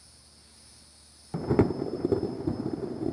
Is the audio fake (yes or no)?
no